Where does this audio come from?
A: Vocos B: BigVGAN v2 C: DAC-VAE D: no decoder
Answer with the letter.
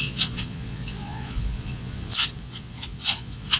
A